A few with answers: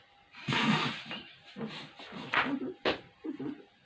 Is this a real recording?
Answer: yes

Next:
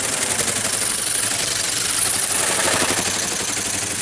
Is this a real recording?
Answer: yes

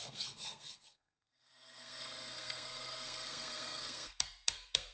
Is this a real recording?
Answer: no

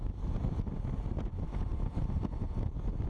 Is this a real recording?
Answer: yes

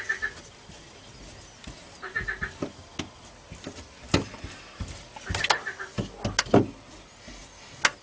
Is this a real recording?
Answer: yes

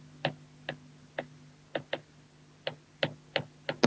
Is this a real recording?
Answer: yes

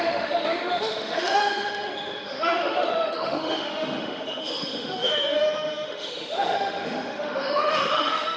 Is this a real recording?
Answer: no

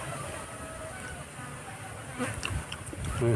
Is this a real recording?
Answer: yes